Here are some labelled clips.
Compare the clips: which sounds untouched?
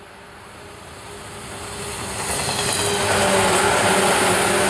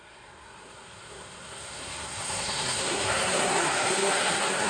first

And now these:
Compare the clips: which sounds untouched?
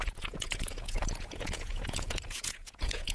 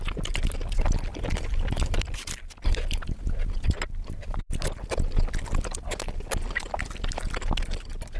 second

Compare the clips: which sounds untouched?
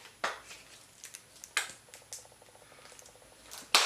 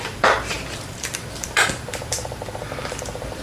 first